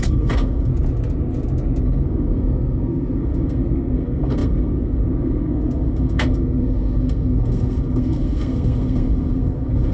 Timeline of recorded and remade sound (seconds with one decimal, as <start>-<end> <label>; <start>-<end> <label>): 0.0-0.7 remade; 0.7-1.8 recorded; 1.8-9.9 remade